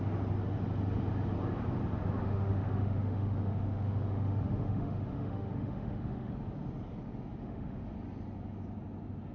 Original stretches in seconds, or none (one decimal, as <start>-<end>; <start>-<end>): 0.0-2.2; 6.3-7.4; 7.9-9.3